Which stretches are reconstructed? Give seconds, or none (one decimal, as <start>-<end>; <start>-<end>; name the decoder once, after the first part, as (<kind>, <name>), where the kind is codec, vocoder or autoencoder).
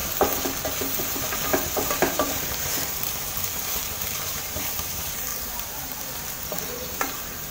0.8-7.5 (vocoder, BigVGAN v2)